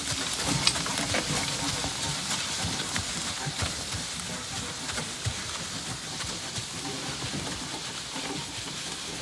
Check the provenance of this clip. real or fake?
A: real